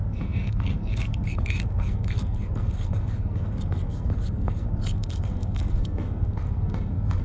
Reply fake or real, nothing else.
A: fake